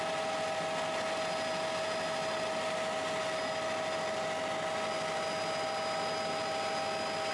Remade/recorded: recorded